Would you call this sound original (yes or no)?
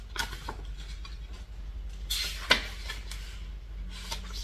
yes